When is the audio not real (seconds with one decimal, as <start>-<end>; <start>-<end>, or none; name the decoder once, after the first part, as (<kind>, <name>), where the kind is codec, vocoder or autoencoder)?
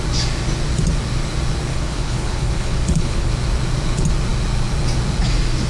1.7-3.3 (codec, HILCodec)